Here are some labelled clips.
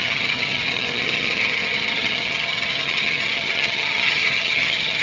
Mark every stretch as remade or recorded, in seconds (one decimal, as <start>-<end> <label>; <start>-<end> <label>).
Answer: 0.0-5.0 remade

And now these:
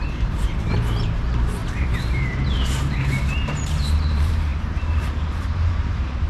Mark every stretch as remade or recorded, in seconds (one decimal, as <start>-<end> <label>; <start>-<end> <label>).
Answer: 0.0-6.3 remade

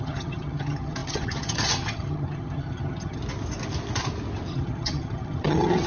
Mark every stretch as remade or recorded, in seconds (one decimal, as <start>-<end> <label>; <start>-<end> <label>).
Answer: 0.0-3.2 remade; 3.2-4.5 recorded; 4.5-5.9 remade

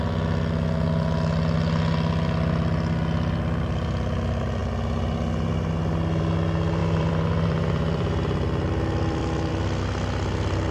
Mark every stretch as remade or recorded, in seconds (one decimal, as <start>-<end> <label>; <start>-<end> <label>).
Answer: 0.0-6.8 recorded; 6.8-9.5 remade; 9.5-10.7 recorded